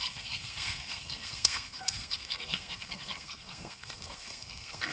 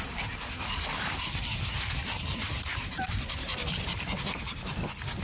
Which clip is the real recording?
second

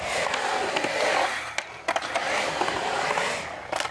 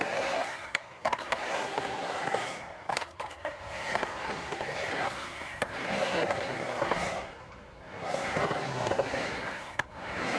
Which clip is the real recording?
first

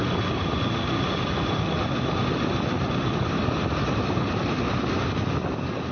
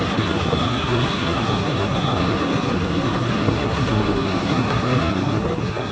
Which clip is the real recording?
first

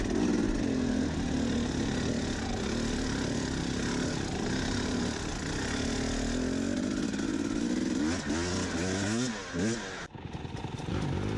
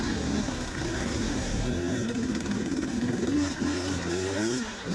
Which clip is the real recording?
first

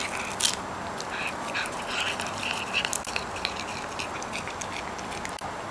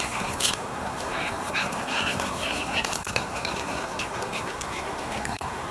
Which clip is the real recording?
first